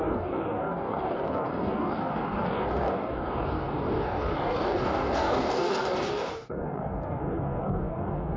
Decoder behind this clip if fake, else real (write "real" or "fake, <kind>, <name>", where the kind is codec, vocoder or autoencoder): fake, codec, DAC